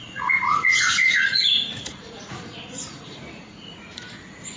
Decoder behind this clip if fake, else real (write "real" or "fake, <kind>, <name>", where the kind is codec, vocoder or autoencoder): fake, vocoder, Vocos